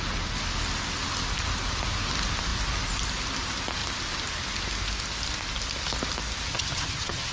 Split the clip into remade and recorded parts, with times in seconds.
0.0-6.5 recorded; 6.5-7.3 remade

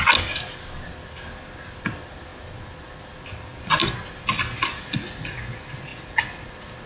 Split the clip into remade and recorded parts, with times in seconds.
0.0-6.9 recorded